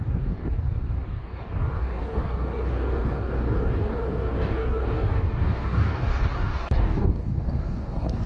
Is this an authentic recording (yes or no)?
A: no